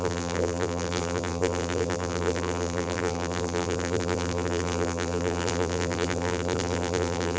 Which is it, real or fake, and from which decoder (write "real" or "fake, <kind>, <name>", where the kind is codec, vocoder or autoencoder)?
fake, vocoder, BigVGAN v2